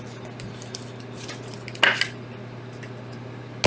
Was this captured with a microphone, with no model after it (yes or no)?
yes